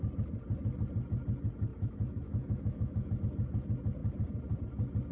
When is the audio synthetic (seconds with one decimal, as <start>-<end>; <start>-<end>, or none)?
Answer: 1.7-3.2